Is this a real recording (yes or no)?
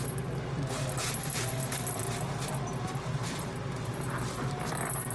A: yes